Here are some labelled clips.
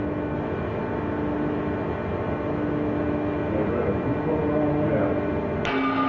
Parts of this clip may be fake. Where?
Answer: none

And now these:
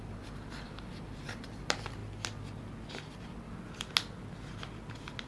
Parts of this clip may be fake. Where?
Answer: 0.0-2.0 (vocoder, BigVGAN v2)